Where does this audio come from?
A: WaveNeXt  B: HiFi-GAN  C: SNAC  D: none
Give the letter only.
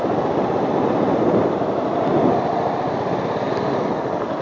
D